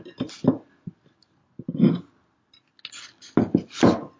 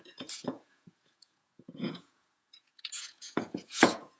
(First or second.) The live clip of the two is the first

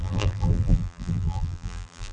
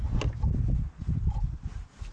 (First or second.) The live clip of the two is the second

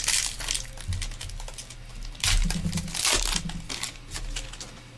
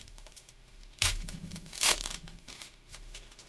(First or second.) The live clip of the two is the first